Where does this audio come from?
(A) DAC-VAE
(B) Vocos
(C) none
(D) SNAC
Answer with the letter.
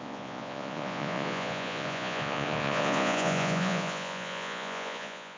B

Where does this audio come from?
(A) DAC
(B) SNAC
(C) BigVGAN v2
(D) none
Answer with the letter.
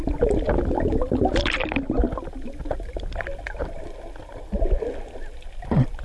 D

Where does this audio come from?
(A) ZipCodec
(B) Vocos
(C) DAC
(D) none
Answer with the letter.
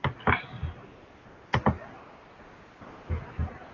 D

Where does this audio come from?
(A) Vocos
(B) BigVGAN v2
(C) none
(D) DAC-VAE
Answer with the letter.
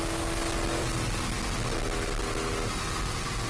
C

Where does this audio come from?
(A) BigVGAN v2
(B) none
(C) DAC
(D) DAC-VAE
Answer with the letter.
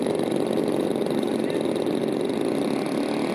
B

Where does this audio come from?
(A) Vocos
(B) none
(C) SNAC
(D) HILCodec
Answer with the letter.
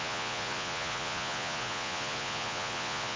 A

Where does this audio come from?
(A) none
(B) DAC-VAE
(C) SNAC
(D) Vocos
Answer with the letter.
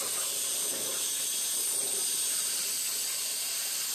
A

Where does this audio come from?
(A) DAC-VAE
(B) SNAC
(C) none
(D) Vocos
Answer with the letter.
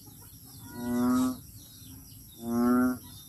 C